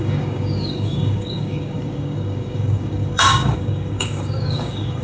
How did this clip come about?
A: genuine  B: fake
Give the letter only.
B